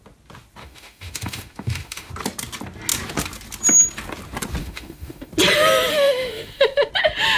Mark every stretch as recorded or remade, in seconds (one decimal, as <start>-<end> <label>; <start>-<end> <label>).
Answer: 0.0-0.6 recorded; 0.6-2.1 remade; 2.1-4.6 recorded; 4.6-5.3 remade; 5.3-5.9 recorded; 5.9-6.9 remade; 6.9-7.4 recorded